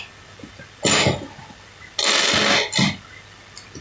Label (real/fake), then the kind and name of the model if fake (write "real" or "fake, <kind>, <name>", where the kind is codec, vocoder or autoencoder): real